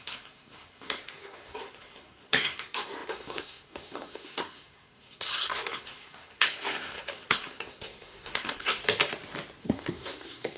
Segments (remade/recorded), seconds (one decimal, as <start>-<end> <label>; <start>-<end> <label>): 0.0-8.8 remade; 8.8-9.6 recorded; 9.6-10.6 remade